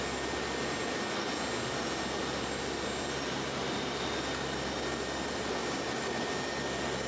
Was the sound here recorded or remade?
recorded